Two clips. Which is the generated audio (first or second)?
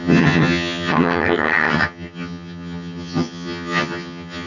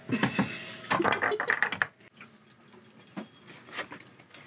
first